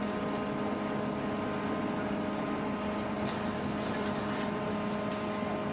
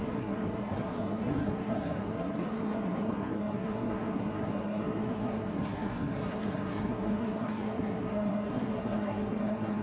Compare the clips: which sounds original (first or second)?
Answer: first